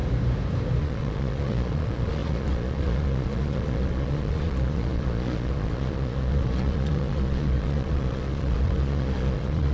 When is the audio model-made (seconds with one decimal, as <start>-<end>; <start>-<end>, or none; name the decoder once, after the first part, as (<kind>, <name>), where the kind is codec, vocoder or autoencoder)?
0.8-9.7 (vocoder, Vocos)